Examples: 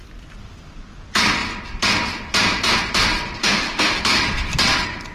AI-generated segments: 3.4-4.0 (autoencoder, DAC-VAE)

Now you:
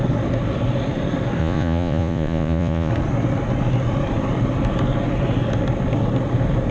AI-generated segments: 1.4-2.9 (vocoder, Vocos)

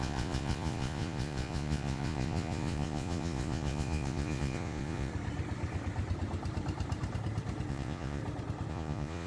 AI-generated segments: 0.0-5.1 (vocoder, Vocos); 7.7-8.2; 8.7-9.3